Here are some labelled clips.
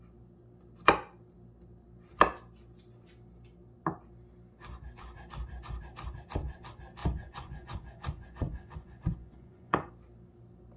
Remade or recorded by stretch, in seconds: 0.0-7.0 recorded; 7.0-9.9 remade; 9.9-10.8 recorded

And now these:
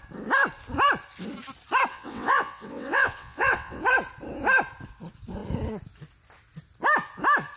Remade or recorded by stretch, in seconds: 0.0-1.9 recorded; 1.9-3.8 remade; 3.8-7.6 recorded

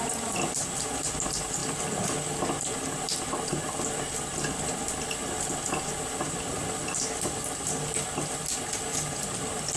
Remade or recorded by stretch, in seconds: 0.0-9.8 recorded

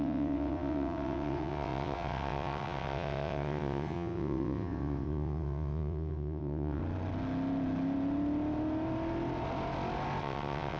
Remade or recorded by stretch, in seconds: 0.0-6.8 remade; 6.8-10.2 recorded; 10.2-10.8 remade

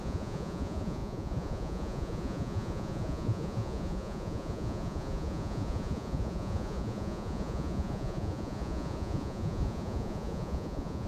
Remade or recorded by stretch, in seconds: 0.0-11.1 remade

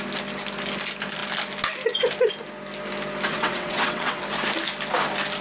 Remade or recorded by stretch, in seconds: 0.0-3.3 recorded; 3.3-4.2 remade; 4.2-5.4 recorded

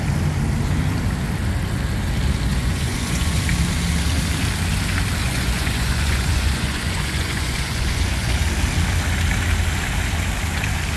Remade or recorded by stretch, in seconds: 0.0-2.5 recorded; 2.5-3.4 remade; 3.4-5.2 recorded; 5.2-8.3 remade; 8.3-11.0 recorded

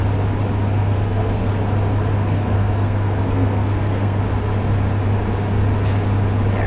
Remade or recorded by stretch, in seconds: 0.0-0.8 recorded; 0.8-1.5 remade; 1.5-2.2 recorded; 2.2-4.2 remade; 4.2-6.7 recorded